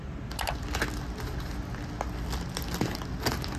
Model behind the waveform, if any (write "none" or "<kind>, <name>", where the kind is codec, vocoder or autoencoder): none